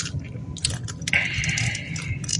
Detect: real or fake real